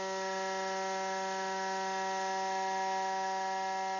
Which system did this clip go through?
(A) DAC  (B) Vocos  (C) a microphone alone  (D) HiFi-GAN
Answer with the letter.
C